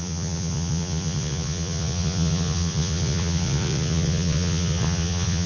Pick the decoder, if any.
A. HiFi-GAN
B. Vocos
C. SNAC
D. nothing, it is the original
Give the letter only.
B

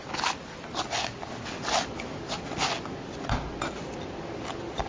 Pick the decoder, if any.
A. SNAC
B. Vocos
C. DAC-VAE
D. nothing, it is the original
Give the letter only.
D